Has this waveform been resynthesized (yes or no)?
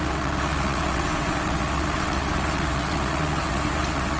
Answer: yes